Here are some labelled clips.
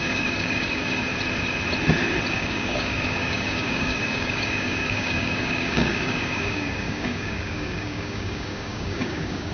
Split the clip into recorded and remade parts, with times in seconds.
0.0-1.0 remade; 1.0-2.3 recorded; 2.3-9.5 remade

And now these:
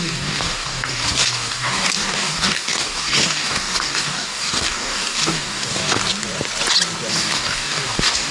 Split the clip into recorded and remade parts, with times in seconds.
0.0-6.0 remade; 6.0-7.1 recorded; 7.1-8.3 remade

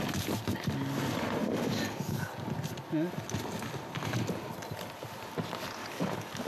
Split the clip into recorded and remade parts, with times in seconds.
0.0-1.4 recorded; 1.4-2.3 remade; 2.3-5.8 recorded; 5.8-6.5 remade

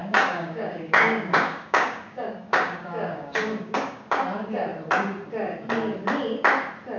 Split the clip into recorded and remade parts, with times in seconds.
0.0-4.2 remade; 4.2-7.0 recorded